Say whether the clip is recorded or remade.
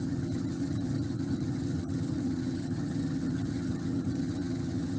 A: remade